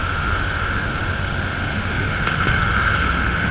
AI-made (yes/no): yes